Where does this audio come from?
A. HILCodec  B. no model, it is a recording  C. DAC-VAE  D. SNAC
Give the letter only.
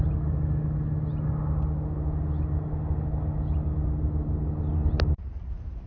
B